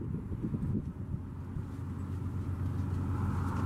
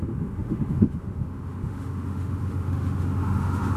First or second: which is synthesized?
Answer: second